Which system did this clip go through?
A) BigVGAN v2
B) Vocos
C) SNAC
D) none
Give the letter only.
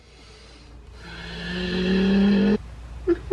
D